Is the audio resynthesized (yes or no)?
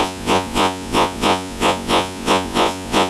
yes